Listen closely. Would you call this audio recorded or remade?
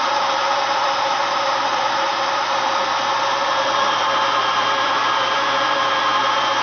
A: remade